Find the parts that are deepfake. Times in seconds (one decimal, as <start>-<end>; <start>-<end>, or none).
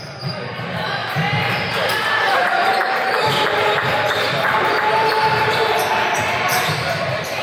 0.0-1.0; 2.3-7.4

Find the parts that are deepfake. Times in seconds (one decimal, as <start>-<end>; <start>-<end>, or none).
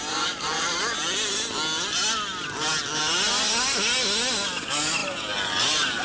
0.0-1.0; 4.6-6.0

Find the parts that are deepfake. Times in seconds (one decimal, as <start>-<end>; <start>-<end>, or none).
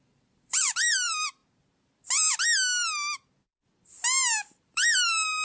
0.0-1.4; 4.6-5.4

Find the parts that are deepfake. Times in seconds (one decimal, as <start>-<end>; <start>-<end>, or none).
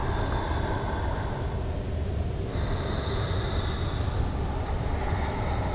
none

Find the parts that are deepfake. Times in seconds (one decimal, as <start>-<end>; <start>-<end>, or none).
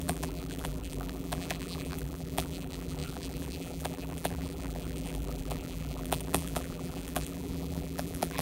0.0-8.4